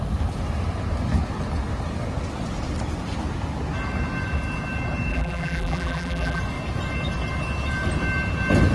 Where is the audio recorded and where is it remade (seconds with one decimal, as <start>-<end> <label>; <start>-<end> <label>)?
0.0-5.1 recorded; 5.1-6.4 remade; 6.4-8.7 recorded